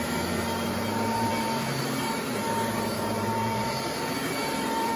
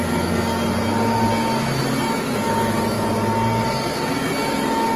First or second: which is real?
second